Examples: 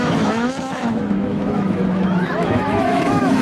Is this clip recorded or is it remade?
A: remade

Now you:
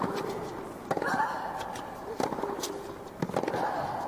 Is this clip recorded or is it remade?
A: recorded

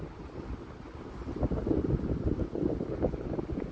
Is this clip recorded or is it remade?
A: recorded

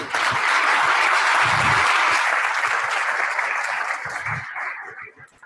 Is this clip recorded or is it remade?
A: recorded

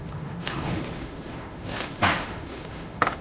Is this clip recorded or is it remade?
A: remade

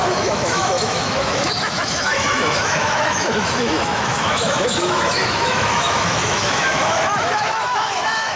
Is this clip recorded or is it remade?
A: remade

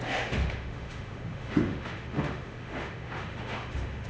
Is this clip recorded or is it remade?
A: remade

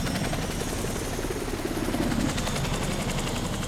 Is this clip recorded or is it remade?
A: recorded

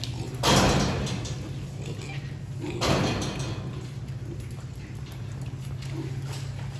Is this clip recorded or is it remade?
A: recorded